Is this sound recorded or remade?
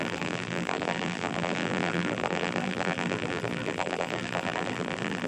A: remade